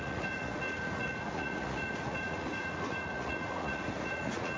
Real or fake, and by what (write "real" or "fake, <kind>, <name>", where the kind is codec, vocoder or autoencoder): fake, vocoder, Vocos